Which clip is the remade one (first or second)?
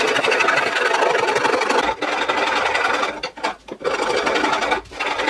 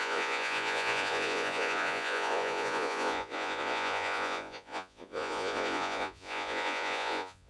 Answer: second